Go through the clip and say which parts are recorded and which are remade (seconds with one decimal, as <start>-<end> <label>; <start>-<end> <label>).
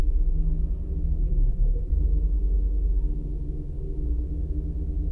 0.0-1.2 recorded; 1.2-1.9 remade; 1.9-5.1 recorded